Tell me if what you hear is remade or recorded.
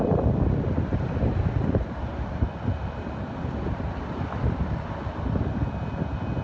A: recorded